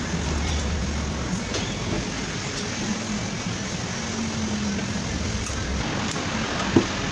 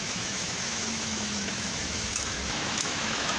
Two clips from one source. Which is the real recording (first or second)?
first